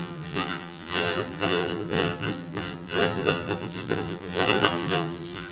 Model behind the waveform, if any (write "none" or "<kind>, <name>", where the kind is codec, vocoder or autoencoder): vocoder, BigVGAN v2